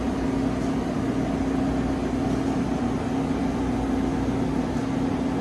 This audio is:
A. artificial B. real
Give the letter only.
B